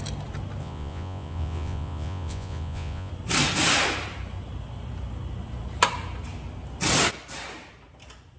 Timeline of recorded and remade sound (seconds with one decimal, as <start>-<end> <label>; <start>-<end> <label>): 0.0-0.6 recorded; 0.6-3.1 remade; 3.1-8.4 recorded